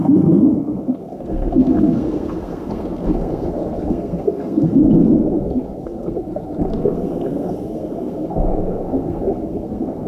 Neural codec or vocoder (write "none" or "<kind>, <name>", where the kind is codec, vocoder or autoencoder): codec, SNAC